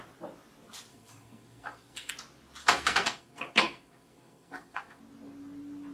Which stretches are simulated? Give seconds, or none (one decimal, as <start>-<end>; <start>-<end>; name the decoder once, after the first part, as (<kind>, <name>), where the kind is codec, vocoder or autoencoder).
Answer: 0.9-2.1 (codec, SNAC); 2.6-5.0